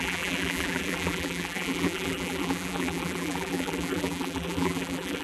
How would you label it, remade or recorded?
remade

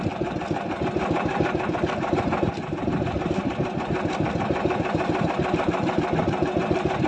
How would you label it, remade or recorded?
recorded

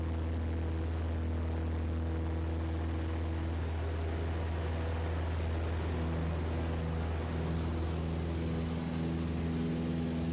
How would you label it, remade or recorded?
recorded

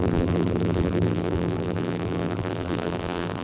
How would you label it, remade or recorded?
remade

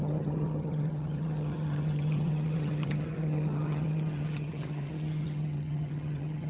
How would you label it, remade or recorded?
remade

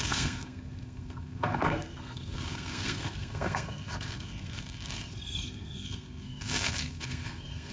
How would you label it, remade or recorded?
remade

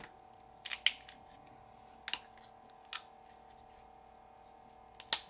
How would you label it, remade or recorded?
recorded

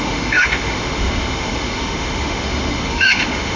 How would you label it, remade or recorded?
remade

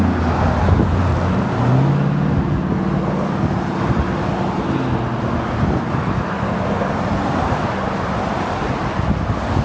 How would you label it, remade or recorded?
recorded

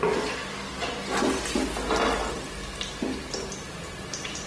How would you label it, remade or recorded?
recorded